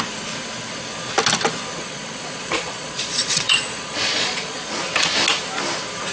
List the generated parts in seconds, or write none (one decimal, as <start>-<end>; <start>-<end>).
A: 1.7-4.8